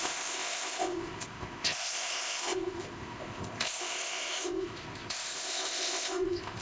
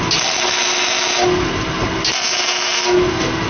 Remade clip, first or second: first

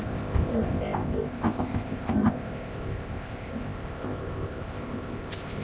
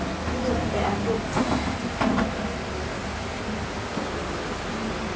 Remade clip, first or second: first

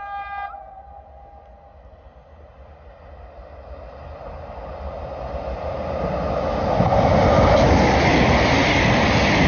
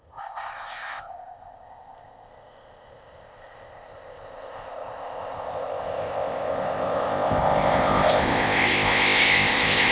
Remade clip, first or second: second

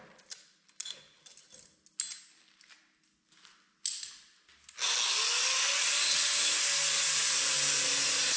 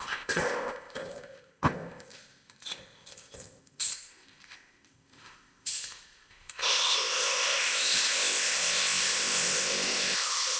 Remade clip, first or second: second